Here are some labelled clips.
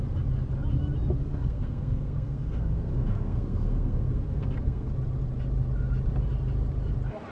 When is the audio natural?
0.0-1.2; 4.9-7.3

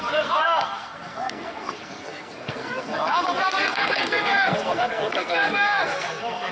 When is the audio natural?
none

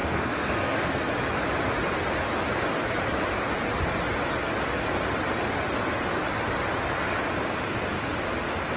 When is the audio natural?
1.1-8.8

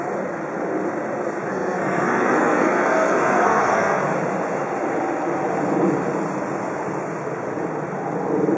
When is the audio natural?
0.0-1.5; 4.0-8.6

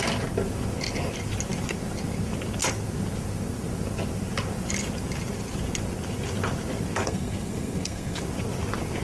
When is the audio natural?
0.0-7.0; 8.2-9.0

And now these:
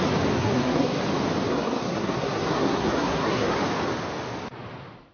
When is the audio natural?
0.0-0.4; 1.0-1.5; 3.6-5.1

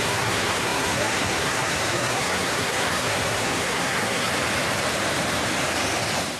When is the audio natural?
4.3-6.4

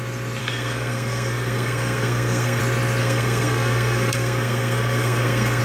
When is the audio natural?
0.0-0.4; 2.6-3.0